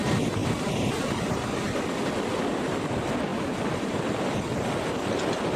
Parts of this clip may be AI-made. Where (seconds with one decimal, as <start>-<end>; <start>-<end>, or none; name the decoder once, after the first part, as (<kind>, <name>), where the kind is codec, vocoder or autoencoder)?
0.4-1.8 (vocoder, BigVGAN v2)